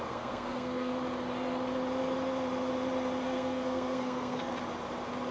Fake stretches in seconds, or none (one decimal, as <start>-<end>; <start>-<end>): 0.0-0.9; 3.2-4.5